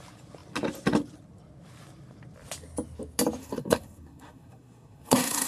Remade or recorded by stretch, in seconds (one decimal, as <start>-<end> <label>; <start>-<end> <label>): 0.0-3.4 recorded; 3.4-5.5 remade